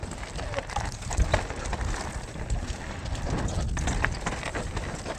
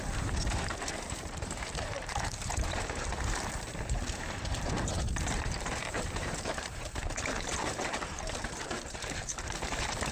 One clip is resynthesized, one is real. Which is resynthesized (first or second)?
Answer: second